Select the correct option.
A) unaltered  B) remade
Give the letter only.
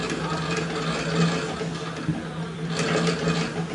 A